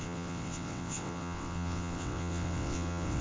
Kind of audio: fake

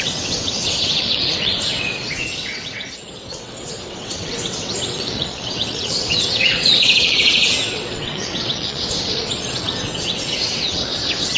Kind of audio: fake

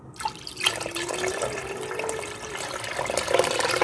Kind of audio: real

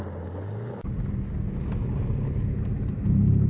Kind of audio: real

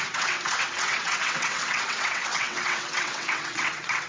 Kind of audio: fake